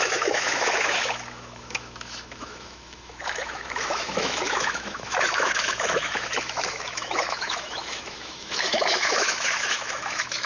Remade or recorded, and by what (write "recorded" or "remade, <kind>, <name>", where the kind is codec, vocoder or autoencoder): remade, autoencoder, DAC-VAE